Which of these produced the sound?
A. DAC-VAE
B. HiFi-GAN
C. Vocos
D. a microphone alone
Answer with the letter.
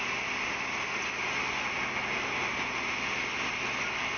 D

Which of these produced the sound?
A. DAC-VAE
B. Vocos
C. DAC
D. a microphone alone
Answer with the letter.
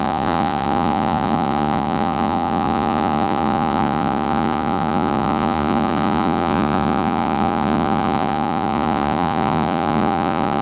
B